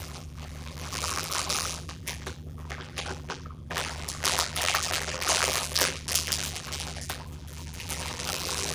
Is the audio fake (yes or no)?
yes